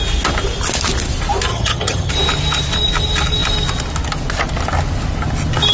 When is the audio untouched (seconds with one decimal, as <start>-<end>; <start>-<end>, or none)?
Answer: 0.0-1.5; 2.1-5.7